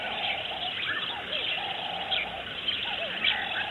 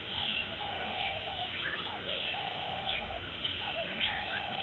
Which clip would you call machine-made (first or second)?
second